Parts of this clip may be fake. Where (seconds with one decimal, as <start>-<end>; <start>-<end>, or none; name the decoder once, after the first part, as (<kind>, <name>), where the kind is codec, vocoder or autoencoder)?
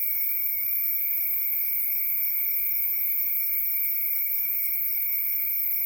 0.0-1.0 (codec, DAC); 4.1-4.7